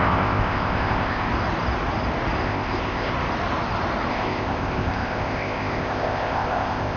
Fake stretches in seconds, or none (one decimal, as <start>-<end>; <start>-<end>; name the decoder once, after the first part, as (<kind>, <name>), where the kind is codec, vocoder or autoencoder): 0.0-1.3 (codec, ZipCodec); 2.4-3.1; 4.1-7.0